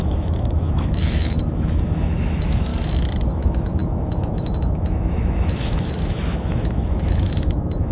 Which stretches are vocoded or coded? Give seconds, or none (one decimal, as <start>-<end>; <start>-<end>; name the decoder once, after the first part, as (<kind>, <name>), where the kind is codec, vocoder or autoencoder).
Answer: 0.0-2.7 (autoencoder, DAC-VAE); 3.3-7.9